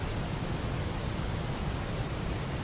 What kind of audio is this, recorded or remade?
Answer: recorded